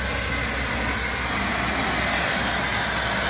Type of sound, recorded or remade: recorded